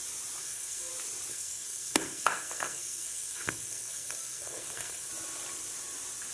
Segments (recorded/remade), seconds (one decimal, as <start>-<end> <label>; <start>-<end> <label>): 0.0-0.4 recorded; 0.4-0.9 remade; 0.9-1.3 recorded; 1.3-5.1 remade; 5.1-6.3 recorded